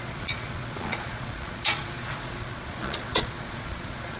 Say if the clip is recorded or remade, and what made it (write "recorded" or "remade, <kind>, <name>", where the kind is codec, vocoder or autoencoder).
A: remade, vocoder, Vocos